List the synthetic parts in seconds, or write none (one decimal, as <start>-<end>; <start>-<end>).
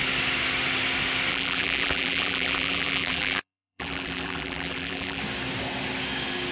1.3-5.2